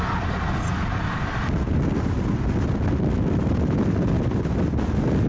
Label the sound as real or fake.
real